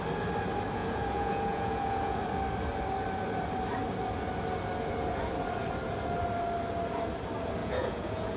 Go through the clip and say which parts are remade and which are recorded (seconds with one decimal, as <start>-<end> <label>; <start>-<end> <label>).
0.0-0.8 recorded; 0.8-2.2 remade; 2.2-7.6 recorded; 7.6-8.4 remade